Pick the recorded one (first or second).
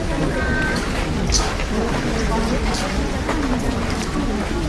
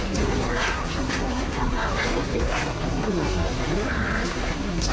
first